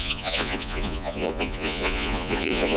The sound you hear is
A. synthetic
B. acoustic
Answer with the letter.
A